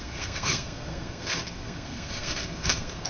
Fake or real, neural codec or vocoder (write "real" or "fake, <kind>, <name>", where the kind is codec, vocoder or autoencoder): fake, codec, SNAC